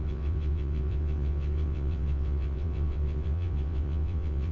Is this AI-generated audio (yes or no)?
yes